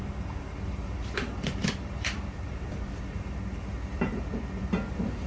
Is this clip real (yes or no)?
no